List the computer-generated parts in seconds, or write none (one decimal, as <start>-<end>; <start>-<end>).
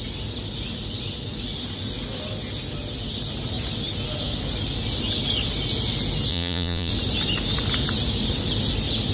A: 6.3-6.9